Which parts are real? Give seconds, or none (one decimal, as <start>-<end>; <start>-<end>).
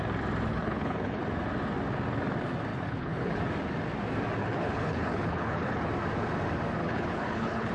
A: 0.0-0.5; 1.2-2.7; 3.4-4.4; 5.9-6.8